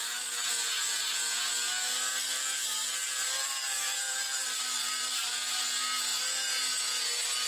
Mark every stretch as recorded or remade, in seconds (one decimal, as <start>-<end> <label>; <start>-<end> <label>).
0.0-0.5 remade; 0.5-2.1 recorded; 2.1-5.5 remade; 5.5-7.5 recorded